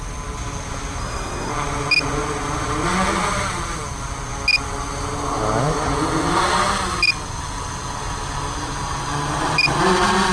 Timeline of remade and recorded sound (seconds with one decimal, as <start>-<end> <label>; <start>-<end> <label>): 0.0-1.0 recorded; 1.0-1.5 remade; 1.5-10.3 recorded